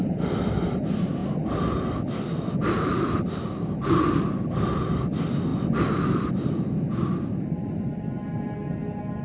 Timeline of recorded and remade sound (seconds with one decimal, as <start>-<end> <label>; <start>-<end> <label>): 0.0-9.2 recorded